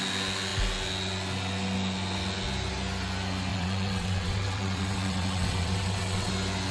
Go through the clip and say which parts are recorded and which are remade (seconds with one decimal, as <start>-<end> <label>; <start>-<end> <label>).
0.0-3.5 recorded; 3.5-6.3 remade; 6.3-6.7 recorded